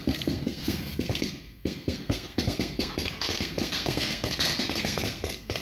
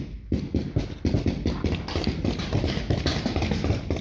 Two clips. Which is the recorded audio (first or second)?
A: second